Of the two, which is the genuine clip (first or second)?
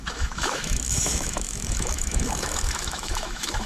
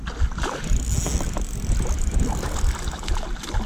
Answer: second